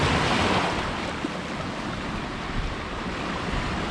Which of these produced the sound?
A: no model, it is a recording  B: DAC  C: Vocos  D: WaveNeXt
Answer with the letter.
A